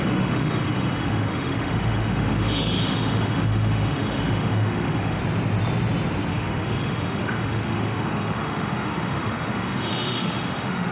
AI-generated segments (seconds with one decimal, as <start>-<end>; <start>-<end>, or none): 0.0-5.2; 6.3-10.9